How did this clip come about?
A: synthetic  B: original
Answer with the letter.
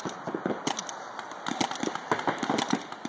B